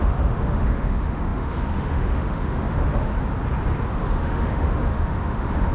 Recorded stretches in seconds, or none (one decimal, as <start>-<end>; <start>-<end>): 3.1-4.0